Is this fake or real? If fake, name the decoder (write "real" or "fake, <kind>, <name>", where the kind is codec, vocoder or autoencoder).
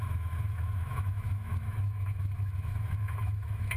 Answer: fake, autoencoder, DAC-VAE